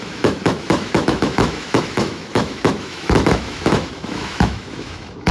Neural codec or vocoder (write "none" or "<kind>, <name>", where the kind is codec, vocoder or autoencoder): autoencoder, DAC-VAE